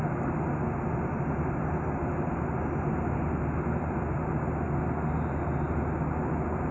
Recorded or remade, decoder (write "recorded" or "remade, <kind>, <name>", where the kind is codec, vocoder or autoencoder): recorded